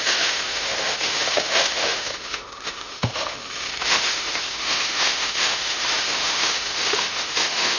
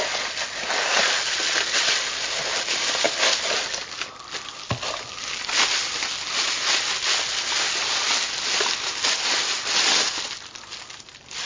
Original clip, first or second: second